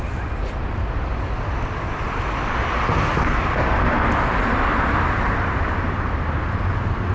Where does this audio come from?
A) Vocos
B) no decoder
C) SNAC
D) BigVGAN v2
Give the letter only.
B